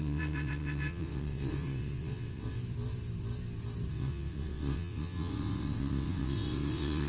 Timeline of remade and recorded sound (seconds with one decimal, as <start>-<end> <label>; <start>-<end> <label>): 0.0-2.6 remade; 2.6-3.9 recorded; 3.9-7.1 remade